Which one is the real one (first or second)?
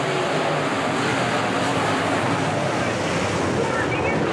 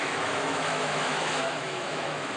first